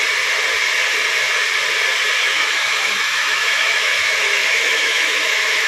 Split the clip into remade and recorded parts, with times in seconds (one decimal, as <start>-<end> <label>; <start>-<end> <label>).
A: 0.0-2.2 recorded; 2.2-5.7 remade